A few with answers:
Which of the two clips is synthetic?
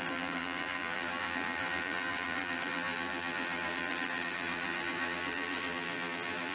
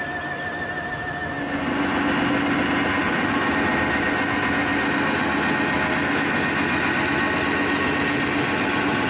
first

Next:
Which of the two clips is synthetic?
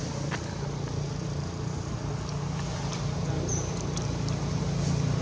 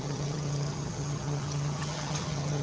second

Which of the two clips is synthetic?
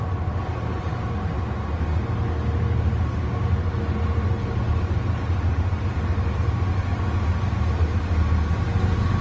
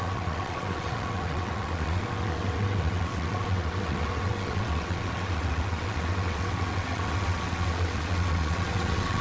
second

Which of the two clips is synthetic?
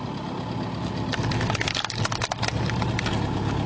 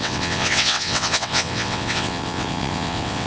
second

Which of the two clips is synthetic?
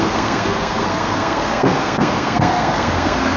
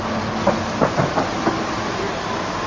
first